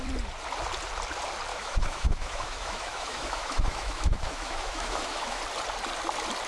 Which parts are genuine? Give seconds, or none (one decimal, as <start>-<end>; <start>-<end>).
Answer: 0.0-1.5; 5.4-6.5